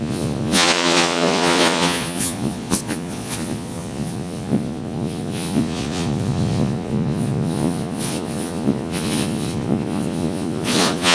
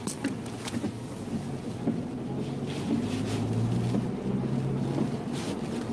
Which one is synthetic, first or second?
first